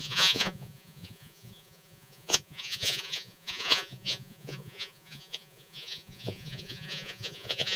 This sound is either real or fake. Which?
fake